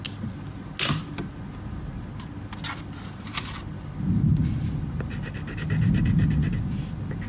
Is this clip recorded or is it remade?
recorded